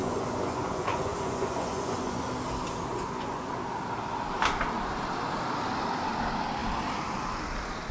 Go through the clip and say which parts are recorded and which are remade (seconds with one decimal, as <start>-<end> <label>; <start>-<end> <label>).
0.0-2.2 remade; 2.2-2.9 recorded; 2.9-3.5 remade; 3.5-7.9 recorded

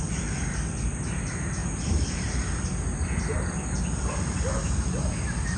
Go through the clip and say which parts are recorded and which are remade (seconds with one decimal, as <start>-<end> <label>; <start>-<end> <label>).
0.0-5.6 recorded

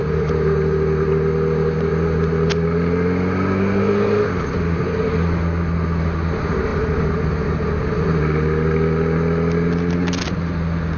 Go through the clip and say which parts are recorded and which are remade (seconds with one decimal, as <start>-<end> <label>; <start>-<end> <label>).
0.0-11.0 recorded

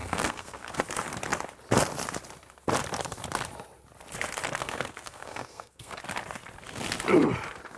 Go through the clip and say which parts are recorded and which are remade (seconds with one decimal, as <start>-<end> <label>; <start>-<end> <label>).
0.0-0.8 remade; 0.8-4.6 recorded; 4.6-6.0 remade; 6.0-7.8 recorded

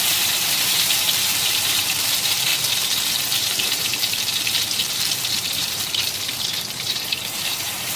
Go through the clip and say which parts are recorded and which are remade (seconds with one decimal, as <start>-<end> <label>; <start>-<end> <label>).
0.0-2.5 remade; 2.5-3.4 recorded; 3.4-8.0 remade

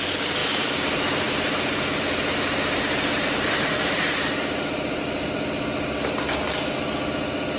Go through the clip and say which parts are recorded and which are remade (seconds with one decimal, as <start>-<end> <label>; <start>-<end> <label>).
0.0-0.4 recorded; 0.4-5.0 remade; 5.0-7.6 recorded

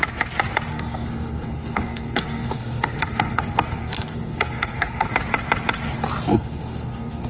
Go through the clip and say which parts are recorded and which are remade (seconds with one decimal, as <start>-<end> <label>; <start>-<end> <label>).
0.0-0.7 recorded; 0.7-5.1 remade; 5.1-6.3 recorded; 6.3-7.3 remade